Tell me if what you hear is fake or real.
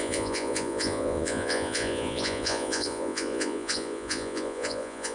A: fake